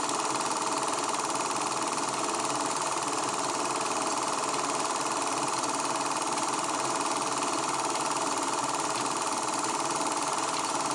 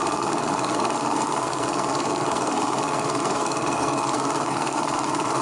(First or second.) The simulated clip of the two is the second